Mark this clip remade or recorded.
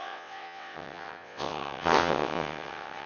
remade